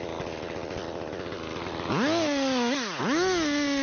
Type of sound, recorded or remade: recorded